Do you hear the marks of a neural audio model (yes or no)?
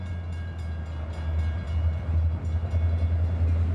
no